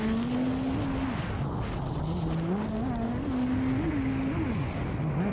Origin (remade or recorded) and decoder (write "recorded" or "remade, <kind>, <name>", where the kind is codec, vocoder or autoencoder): recorded